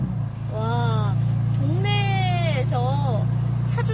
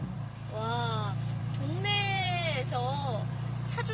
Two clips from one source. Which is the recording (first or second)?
first